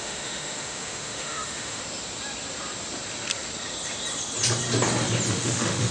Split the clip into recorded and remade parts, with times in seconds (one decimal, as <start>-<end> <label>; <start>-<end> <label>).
0.0-1.8 remade; 1.8-5.3 recorded; 5.3-5.9 remade